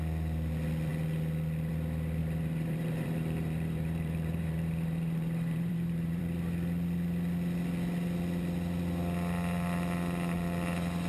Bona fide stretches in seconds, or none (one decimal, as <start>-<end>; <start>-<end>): 0.0-2.2; 6.2-11.1